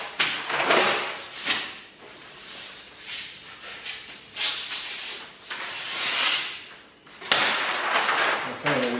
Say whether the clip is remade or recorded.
recorded